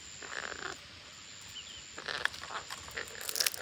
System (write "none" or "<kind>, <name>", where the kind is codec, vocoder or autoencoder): none